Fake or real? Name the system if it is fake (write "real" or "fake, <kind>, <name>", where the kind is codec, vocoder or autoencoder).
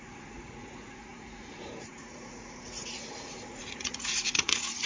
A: fake, vocoder, Vocos